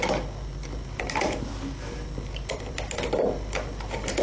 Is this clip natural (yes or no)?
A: no